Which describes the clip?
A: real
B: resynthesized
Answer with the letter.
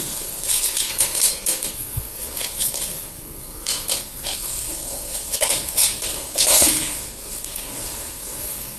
B